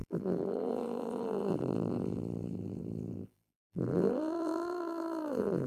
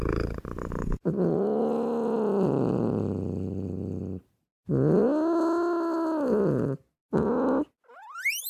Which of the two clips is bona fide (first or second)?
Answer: second